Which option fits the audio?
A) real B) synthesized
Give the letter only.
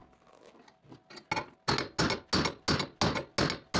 A